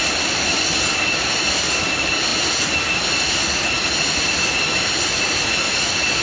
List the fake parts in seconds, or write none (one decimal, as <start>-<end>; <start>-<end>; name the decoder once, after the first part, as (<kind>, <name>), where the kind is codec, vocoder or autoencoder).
none